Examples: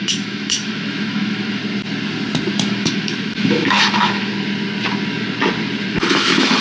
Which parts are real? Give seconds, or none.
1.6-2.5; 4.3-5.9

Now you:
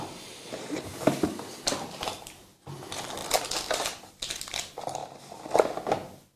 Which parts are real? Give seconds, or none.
0.0-6.4

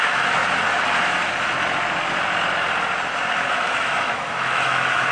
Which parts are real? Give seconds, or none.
0.4-3.5

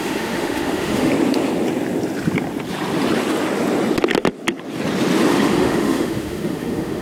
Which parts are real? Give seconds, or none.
1.1-5.3

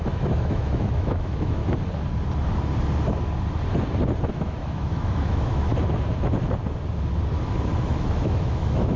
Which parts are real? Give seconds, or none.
1.6-4.3; 5.7-7.8